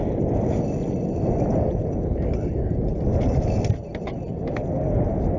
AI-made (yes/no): no